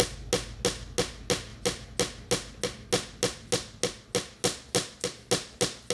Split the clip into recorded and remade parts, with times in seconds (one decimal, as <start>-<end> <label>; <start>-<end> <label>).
0.0-5.9 recorded